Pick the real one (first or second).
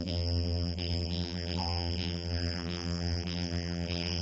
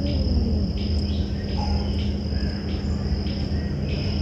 second